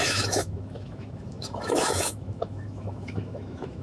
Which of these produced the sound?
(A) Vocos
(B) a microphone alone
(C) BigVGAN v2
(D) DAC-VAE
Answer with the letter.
D